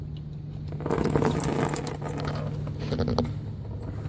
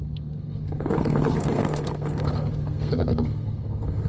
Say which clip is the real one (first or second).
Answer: first